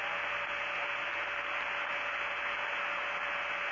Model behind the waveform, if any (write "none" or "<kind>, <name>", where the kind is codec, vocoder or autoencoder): none